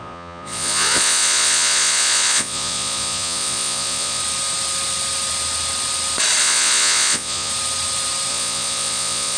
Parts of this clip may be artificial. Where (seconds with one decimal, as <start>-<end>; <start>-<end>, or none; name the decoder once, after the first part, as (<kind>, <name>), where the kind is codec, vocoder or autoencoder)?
0.0-4.2 (vocoder, Vocos); 6.4-7.5; 8.3-9.4